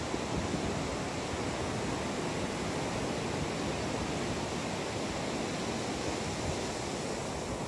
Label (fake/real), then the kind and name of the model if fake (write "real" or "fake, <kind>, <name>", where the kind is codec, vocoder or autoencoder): real